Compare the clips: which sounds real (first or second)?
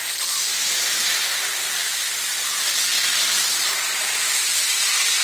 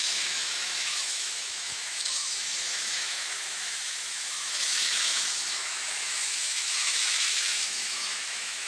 first